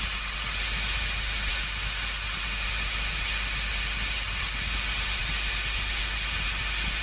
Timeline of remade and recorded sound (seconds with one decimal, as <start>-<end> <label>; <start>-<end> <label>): 0.0-7.0 recorded